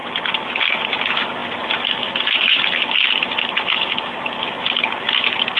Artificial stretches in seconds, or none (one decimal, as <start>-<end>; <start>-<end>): none